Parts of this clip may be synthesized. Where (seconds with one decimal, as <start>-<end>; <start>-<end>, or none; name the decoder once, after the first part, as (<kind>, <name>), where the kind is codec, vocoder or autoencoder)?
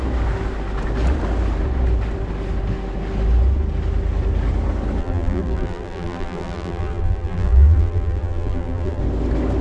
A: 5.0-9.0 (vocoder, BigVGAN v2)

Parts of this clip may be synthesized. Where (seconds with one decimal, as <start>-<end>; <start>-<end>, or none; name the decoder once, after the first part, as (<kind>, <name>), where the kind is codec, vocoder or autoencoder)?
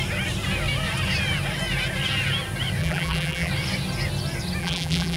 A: 2.8-3.5 (vocoder, BigVGAN v2); 4.6-5.2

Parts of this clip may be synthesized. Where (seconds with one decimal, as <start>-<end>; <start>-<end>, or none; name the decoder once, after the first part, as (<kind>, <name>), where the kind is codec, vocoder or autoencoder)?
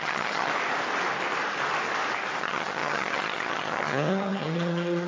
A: 0.0-0.5 (vocoder, HiFi-GAN); 2.4-5.1